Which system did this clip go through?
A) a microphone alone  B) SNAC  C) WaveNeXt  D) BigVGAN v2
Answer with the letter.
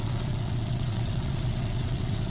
C